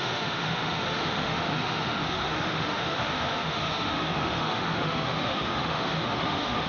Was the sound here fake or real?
fake